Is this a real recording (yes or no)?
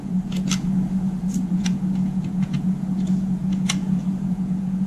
no